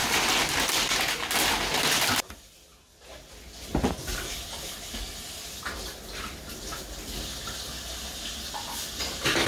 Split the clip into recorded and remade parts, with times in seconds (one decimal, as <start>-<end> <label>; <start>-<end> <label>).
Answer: 0.0-9.5 recorded